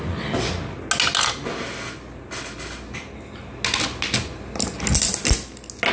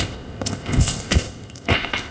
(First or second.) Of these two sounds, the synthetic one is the second